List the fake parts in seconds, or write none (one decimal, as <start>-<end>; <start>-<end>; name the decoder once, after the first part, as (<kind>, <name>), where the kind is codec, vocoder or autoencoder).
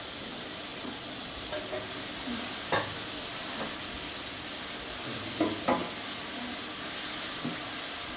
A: 0.0-0.7 (vocoder, BigVGAN v2); 3.7-5.8; 7.2-8.2